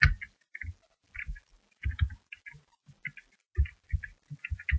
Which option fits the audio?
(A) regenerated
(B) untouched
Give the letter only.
B